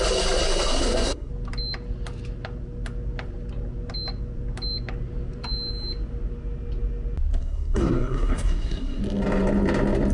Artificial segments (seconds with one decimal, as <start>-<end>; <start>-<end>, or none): 0.7-1.3; 7.4-9.0